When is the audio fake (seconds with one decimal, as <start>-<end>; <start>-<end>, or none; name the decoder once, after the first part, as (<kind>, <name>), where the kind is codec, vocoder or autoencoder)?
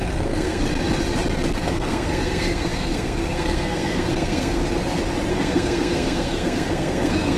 0.0-0.7 (codec, SNAC); 1.5-4.6; 5.3-7.4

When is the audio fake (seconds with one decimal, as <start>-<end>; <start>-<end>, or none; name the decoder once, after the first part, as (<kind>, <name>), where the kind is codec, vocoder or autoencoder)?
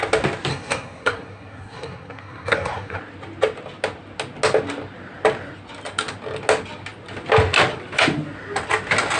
0.5-3.0 (codec, SNAC)